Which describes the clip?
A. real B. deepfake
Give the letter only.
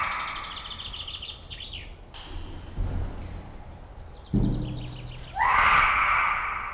A